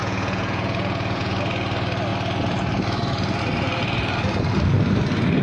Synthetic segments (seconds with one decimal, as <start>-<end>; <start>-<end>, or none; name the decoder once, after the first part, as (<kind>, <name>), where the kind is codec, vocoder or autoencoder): 0.0-1.4 (vocoder, Vocos)